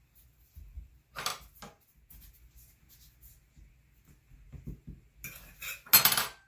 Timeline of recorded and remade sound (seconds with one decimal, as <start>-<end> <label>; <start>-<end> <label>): 0.0-6.5 recorded